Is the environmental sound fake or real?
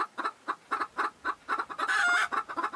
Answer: real